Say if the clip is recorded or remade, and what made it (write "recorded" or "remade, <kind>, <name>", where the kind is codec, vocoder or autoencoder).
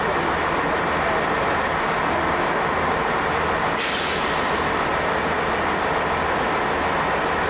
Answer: recorded